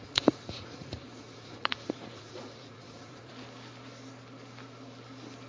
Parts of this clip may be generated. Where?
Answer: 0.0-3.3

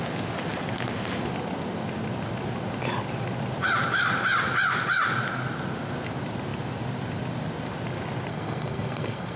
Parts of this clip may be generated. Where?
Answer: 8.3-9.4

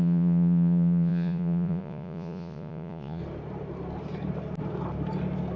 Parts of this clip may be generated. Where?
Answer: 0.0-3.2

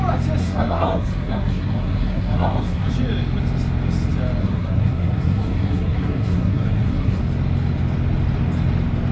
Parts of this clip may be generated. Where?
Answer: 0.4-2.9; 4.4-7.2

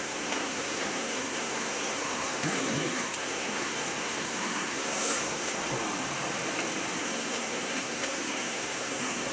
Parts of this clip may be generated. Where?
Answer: 0.0-5.6; 7.0-9.3

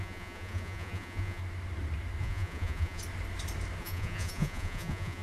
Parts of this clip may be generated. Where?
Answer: 0.0-1.4; 2.2-3.0; 3.8-5.2